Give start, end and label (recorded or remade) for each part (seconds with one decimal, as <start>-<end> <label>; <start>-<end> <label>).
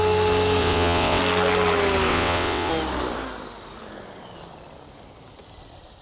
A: 0.0-0.6 recorded; 0.6-1.2 remade; 1.2-2.1 recorded; 2.1-2.7 remade; 2.7-6.0 recorded